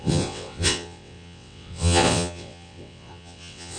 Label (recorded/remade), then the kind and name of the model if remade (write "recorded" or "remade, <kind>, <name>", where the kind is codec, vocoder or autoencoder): remade, vocoder, WaveNeXt